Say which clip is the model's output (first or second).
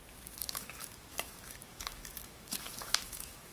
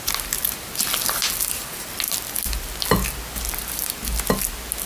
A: first